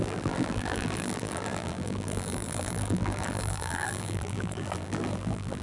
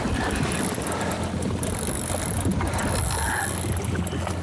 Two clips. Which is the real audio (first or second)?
second